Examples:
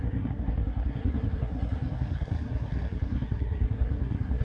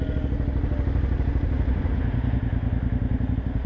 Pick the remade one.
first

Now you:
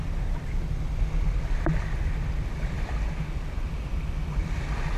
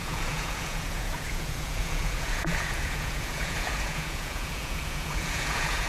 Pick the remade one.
second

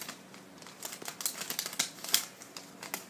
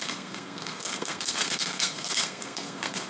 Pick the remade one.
second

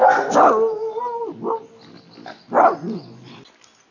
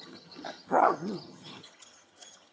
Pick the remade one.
second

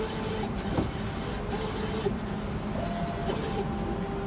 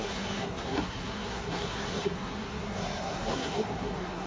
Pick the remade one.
second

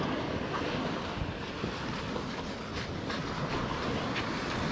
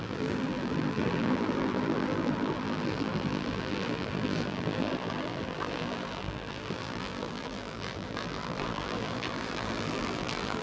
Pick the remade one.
second